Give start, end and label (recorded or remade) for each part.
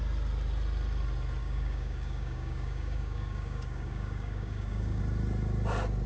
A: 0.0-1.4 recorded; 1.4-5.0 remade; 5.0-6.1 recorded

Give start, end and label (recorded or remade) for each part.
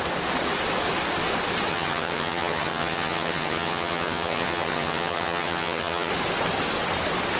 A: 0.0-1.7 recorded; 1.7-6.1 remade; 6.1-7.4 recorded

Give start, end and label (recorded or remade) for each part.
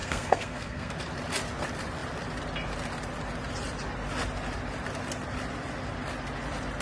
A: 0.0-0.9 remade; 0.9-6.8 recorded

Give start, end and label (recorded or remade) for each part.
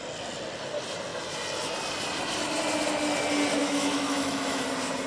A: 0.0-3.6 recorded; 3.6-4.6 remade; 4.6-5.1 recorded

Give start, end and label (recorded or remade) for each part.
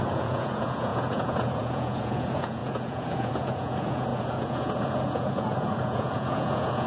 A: 0.0-6.9 remade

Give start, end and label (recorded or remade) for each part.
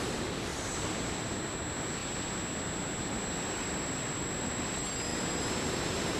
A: 0.0-5.1 recorded; 5.1-6.2 remade